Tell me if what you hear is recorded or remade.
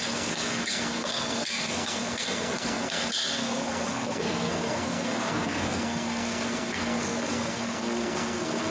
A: remade